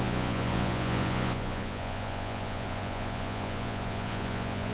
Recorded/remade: remade